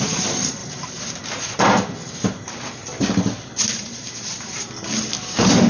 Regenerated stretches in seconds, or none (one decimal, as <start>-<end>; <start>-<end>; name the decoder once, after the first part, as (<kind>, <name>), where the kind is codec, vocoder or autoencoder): 0.6-2.6 (vocoder, BigVGAN v2); 3.7-4.7